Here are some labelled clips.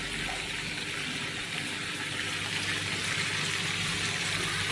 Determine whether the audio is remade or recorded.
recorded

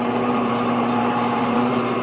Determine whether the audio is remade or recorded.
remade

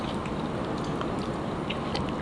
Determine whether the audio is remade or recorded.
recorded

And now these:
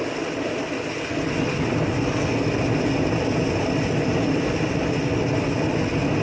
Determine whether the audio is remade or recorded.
recorded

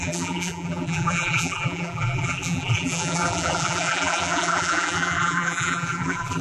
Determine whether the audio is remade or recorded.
remade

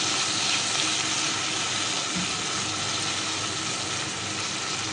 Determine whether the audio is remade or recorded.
recorded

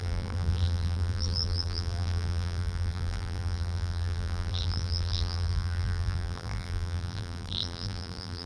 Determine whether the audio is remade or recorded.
remade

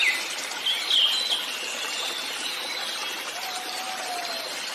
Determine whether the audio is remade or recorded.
recorded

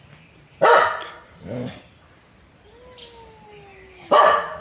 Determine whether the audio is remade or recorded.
recorded